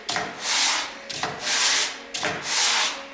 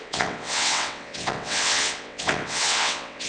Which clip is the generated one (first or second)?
second